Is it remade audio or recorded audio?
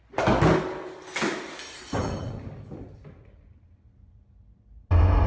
recorded